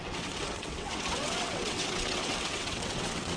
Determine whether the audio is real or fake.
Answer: fake